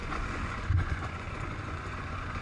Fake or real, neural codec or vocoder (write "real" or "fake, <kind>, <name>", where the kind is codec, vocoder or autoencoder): fake, vocoder, Vocos